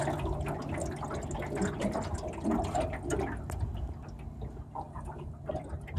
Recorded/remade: recorded